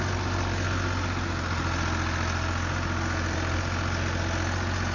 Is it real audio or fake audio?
real